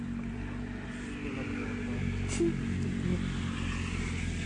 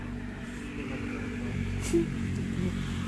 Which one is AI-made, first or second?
second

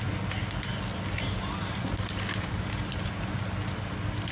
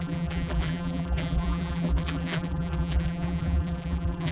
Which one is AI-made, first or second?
second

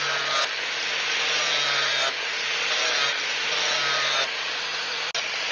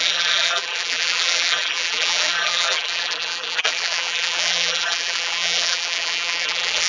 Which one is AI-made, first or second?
second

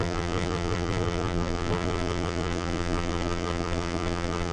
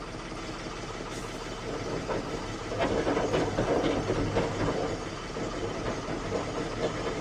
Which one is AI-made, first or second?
first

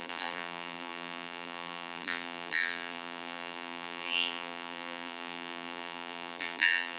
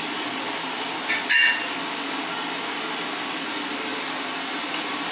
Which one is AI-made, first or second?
first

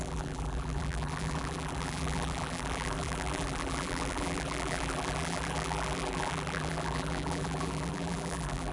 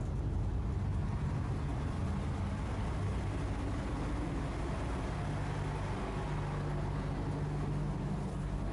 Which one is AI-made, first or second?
first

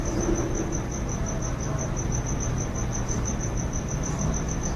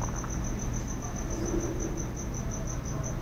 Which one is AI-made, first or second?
first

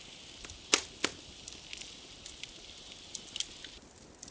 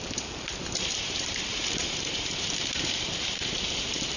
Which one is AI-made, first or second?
second